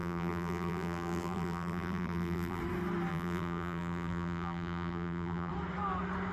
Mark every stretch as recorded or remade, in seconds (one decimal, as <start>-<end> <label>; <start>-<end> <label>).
0.0-2.6 remade; 2.6-3.1 recorded; 3.1-5.5 remade; 5.5-6.3 recorded